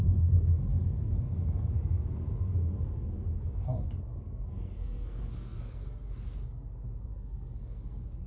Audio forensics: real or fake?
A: fake